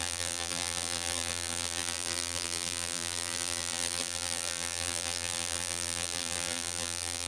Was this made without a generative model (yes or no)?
no